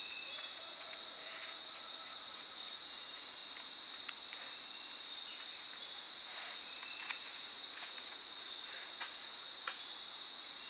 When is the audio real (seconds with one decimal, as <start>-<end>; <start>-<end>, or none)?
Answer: 3.4-5.8